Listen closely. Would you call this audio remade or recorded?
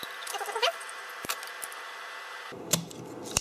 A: recorded